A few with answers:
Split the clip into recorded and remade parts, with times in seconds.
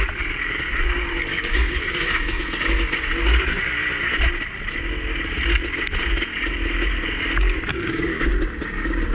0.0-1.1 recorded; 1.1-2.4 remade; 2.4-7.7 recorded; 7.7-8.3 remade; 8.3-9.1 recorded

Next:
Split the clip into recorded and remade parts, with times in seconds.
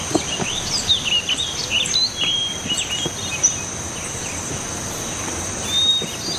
0.0-6.4 recorded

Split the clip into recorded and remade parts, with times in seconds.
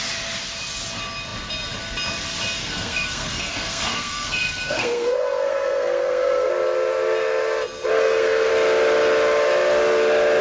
0.0-2.6 recorded; 2.6-6.5 remade; 6.5-7.9 recorded; 7.9-8.5 remade; 8.5-10.4 recorded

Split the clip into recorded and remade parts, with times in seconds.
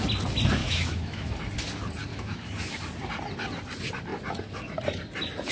0.0-0.6 recorded; 0.6-1.3 remade; 1.3-2.1 recorded; 2.1-2.7 remade; 2.7-5.5 recorded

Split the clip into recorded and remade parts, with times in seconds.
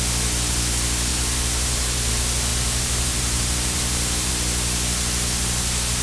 0.0-1.1 recorded; 1.1-2.1 remade; 2.1-2.5 recorded; 2.5-4.3 remade; 4.3-6.0 recorded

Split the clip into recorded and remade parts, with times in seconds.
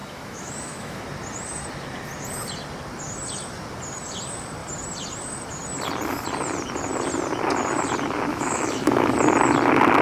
0.0-1.0 remade; 1.0-8.3 recorded; 8.3-9.2 remade; 9.2-10.0 recorded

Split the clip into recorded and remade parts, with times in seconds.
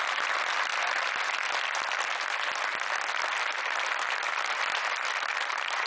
0.0-5.9 recorded